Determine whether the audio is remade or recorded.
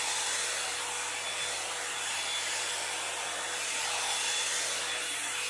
recorded